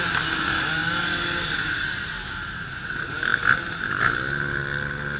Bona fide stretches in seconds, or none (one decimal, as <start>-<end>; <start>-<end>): 0.0-5.2